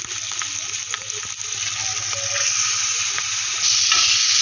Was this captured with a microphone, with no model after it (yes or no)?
yes